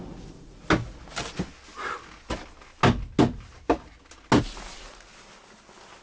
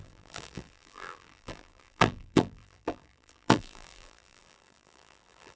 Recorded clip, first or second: first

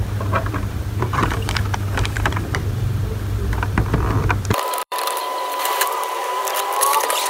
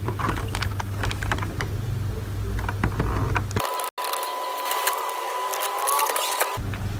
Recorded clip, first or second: second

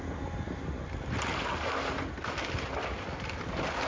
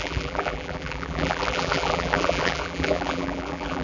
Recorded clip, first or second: first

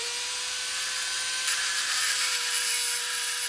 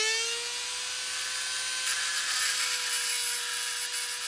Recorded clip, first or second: second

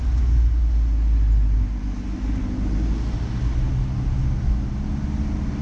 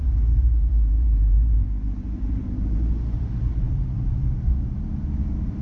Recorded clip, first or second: first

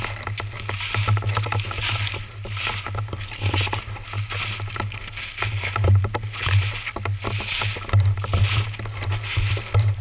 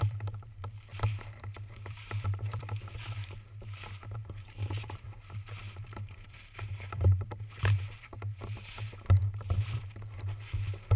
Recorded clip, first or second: first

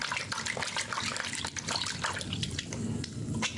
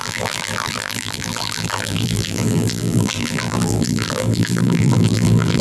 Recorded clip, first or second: first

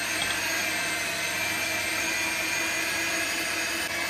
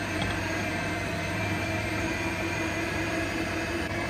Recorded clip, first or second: first